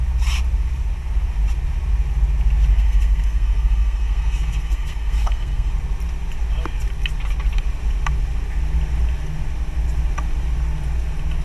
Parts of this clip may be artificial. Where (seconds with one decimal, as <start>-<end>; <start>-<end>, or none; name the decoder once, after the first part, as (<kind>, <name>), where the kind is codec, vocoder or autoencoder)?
2.7-5.7 (codec, SNAC)

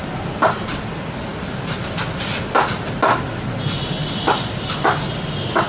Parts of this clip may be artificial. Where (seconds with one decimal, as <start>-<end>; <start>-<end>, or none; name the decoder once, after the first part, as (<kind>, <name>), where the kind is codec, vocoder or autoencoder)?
none

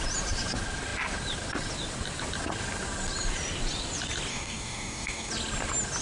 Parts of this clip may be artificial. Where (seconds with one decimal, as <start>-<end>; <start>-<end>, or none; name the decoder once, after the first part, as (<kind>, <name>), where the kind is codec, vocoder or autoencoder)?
4.3-5.3 (codec, DAC)

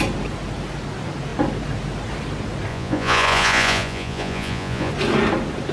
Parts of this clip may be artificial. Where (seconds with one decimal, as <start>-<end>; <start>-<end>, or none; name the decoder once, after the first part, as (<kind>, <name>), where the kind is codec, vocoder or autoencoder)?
2.7-4.9 (vocoder, Vocos)